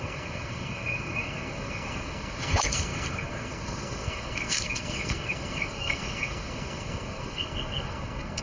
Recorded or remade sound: remade